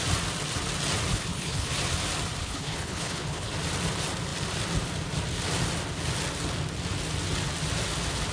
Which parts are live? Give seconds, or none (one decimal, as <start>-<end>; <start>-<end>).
0.0-1.1; 1.7-2.4; 3.5-8.3